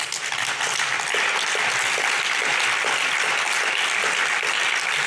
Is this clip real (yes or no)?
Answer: yes